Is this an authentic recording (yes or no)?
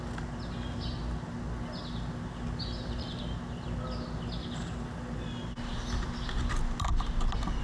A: yes